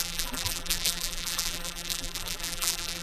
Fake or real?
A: fake